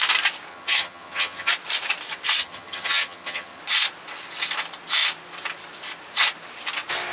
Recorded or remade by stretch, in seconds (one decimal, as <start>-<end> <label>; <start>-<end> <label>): 0.0-0.5 recorded; 0.5-1.5 remade; 1.5-2.4 recorded; 2.4-3.6 remade; 3.6-7.1 recorded